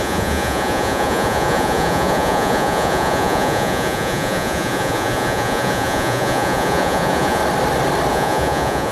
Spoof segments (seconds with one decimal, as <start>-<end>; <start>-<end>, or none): 0.0-7.4; 8.1-8.9